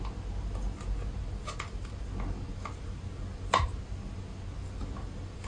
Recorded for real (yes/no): yes